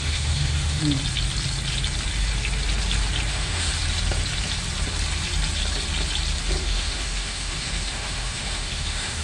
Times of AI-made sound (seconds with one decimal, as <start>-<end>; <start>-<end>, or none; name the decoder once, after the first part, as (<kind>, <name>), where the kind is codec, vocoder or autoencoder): 0.0-0.8 (autoencoder, DAC-VAE); 3.3-3.7; 6.6-9.2